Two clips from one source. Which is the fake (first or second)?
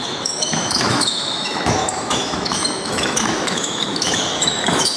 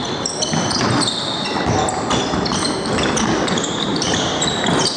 first